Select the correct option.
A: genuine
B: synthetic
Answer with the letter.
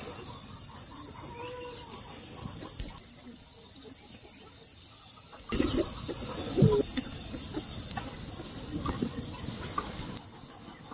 A